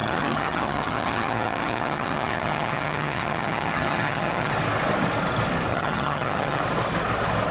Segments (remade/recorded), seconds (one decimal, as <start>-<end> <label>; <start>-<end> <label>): 0.0-4.5 remade; 4.5-5.7 recorded; 5.7-6.6 remade; 6.6-7.5 recorded